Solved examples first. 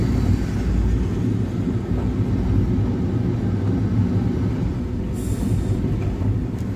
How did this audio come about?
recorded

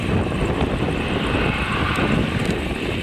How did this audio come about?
recorded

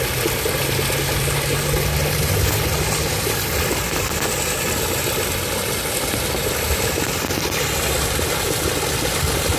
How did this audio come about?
recorded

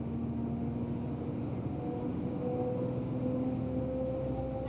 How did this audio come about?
recorded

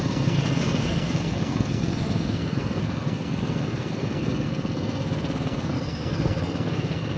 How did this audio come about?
remade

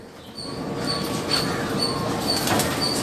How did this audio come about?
recorded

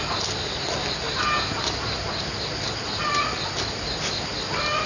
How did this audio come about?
recorded